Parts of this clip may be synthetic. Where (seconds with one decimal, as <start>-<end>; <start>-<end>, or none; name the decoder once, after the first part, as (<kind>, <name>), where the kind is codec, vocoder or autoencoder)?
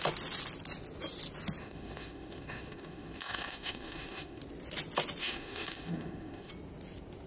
1.6-4.4 (autoencoder, DAC-VAE); 5.2-6.5